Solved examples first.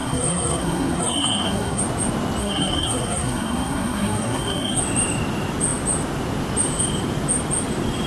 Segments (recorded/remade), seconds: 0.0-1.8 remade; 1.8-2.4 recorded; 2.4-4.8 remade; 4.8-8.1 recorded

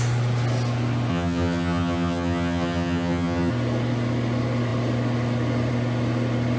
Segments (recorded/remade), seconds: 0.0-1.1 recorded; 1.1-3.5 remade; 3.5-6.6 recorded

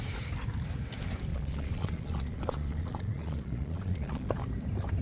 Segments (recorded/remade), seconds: 0.0-1.3 recorded; 1.3-4.3 remade; 4.3-5.0 recorded

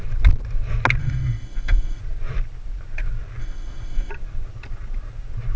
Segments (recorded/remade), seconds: 0.0-1.0 recorded; 1.0-2.0 remade; 2.0-3.4 recorded; 3.4-4.1 remade; 4.1-5.6 recorded

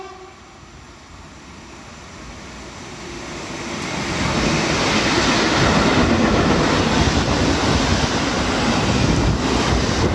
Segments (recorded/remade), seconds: 0.0-10.1 recorded